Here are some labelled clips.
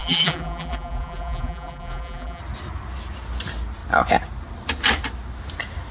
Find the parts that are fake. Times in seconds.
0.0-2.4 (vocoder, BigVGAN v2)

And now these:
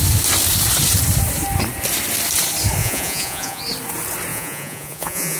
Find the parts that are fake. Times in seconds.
2.8-3.6 (vocoder, Vocos); 4.3-5.4